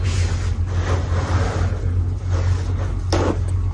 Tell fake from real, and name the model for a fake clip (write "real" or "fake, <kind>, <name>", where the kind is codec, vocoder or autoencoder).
real